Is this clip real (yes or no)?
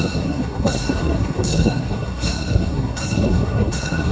no